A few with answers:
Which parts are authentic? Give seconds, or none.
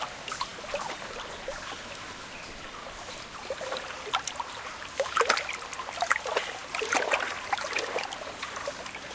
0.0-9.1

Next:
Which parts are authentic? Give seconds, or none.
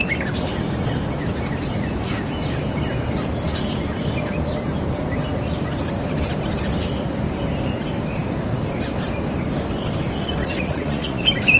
0.0-10.4; 11.2-11.6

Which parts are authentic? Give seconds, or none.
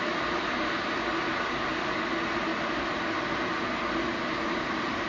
0.0-5.1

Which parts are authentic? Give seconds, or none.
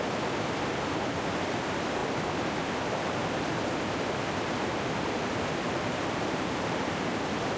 0.0-7.6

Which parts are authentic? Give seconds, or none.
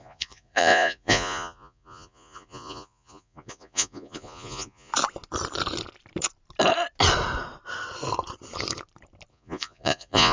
4.9-9.3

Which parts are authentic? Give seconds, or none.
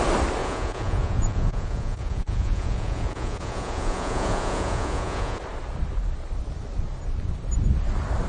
0.0-0.4; 5.4-8.3